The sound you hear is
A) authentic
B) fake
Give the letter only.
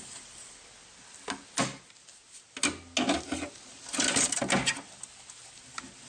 A